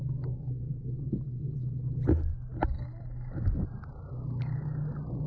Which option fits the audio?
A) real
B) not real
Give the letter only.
A